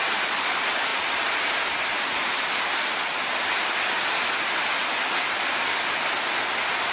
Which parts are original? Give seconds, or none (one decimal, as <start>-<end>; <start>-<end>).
0.0-6.9